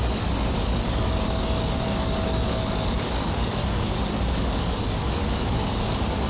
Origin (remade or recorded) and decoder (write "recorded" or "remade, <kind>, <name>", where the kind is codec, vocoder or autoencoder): remade, codec, DAC